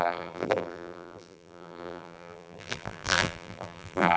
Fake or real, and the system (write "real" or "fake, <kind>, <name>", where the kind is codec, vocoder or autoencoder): fake, vocoder, BigVGAN v2